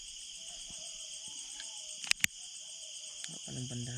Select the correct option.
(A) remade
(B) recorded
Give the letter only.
B